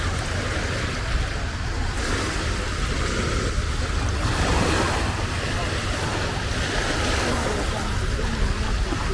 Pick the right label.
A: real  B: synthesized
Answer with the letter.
A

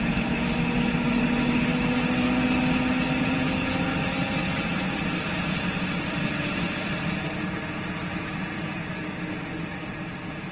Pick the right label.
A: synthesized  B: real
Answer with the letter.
B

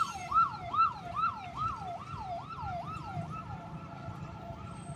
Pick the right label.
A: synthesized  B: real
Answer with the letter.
A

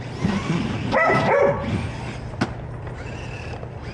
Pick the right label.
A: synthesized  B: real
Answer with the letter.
B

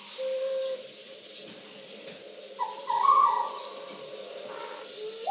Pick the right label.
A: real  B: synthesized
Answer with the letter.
A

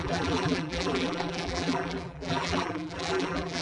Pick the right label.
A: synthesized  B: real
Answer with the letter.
A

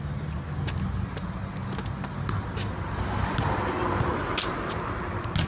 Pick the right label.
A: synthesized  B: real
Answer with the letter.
B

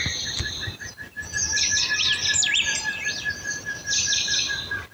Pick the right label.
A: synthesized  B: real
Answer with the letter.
A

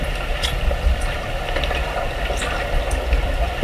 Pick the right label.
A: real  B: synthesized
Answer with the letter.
A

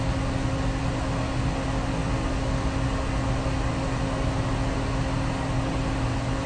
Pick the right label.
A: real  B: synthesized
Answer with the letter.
A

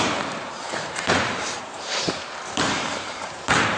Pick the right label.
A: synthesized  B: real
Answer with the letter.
A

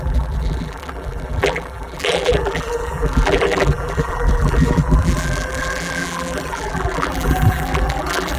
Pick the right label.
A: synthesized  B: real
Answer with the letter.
A